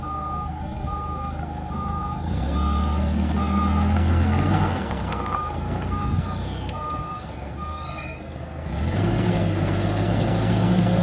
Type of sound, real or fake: fake